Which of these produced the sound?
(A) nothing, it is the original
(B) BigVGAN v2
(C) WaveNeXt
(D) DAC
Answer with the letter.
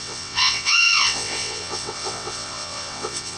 C